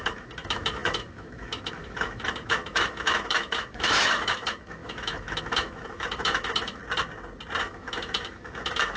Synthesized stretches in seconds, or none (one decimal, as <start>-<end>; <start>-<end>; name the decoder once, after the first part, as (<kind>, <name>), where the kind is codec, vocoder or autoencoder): 0.0-6.8 (autoencoder, DAC-VAE); 7.6-9.0